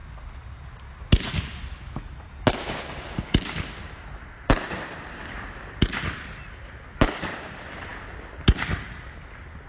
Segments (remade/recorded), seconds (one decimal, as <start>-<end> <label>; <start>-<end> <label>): 0.0-9.7 recorded